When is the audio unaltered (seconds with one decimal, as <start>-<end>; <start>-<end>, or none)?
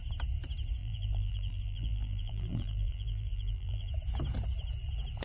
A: 0.0-0.8; 3.9-5.2